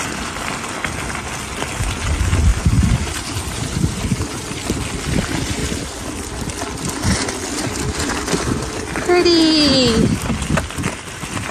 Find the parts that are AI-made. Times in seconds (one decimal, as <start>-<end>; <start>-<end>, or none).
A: 2.5-4.6